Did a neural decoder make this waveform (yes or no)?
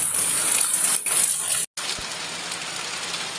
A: no